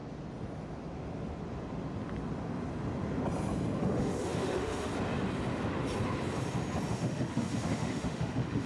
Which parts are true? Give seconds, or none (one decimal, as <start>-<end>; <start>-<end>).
0.0-3.8; 4.9-6.9